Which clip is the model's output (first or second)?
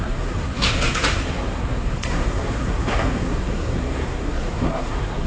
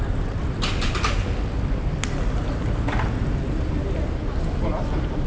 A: first